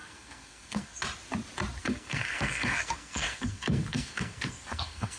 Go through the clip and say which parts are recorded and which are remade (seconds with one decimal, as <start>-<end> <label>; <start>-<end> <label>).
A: 0.0-1.0 remade; 1.0-1.8 recorded; 1.8-5.2 remade